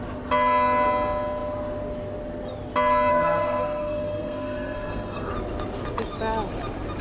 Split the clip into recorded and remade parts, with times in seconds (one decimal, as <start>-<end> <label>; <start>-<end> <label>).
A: 0.0-3.1 recorded; 3.1-5.3 remade; 5.3-7.0 recorded